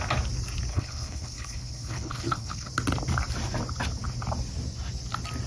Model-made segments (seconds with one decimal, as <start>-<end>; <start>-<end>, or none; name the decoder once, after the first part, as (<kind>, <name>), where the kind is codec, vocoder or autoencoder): 0.7-2.7 (codec, HILCodec)